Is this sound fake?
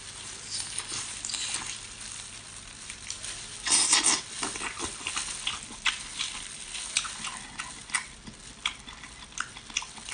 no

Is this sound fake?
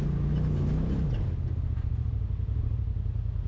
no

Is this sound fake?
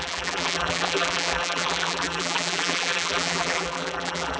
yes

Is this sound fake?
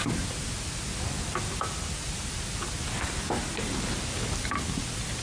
no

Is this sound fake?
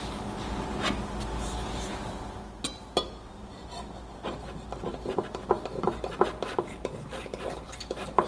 no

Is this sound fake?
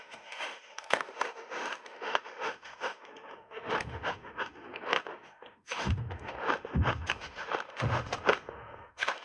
yes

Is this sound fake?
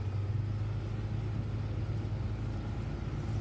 no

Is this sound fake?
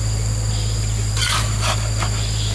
no